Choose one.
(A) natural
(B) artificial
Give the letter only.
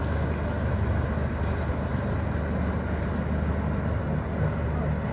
A